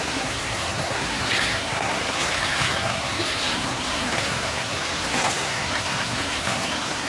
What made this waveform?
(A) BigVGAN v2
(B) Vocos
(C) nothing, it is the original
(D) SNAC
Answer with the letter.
D